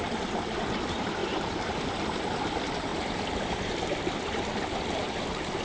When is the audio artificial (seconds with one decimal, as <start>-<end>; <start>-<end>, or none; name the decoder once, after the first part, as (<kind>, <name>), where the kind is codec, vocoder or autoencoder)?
0.0-2.9 (vocoder, BigVGAN v2); 3.4-5.6